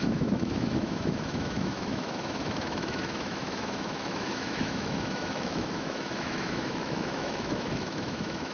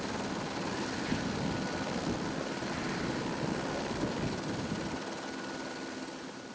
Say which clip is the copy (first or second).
first